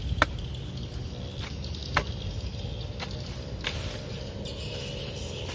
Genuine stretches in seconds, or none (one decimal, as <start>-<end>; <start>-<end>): 0.0-5.5